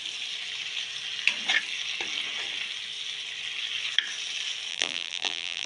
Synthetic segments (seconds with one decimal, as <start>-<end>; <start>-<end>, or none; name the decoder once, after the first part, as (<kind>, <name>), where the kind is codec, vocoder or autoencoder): 4.7-5.7 (vocoder, BigVGAN v2)

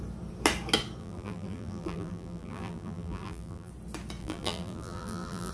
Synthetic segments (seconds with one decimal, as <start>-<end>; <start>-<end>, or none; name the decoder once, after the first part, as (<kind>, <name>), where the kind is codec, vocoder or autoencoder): 1.0-3.7 (vocoder, BigVGAN v2); 4.2-5.5

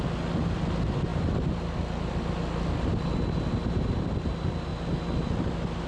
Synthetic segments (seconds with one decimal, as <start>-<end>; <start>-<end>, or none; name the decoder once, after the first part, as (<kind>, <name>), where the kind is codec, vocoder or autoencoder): none

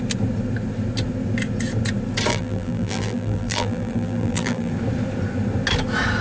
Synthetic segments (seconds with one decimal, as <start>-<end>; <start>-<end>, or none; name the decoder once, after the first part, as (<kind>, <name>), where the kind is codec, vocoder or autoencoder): 2.3-4.7 (vocoder, BigVGAN v2)

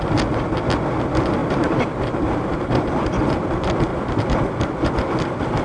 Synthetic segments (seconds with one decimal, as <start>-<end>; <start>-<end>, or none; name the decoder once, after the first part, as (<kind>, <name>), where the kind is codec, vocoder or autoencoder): 1.4-2.6 (vocoder, BigVGAN v2); 3.9-4.4

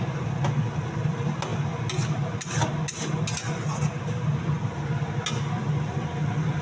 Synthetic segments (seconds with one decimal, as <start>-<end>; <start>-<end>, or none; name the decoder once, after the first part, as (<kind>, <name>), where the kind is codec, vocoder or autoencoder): none

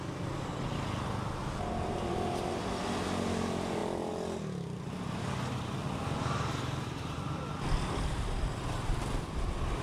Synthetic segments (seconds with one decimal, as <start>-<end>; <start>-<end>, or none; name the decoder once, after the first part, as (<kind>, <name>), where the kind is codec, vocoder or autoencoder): none

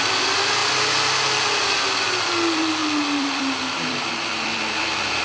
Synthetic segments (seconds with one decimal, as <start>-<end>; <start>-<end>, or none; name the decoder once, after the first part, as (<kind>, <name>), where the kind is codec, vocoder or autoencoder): 0.0-0.6 (vocoder, BigVGAN v2); 2.2-5.2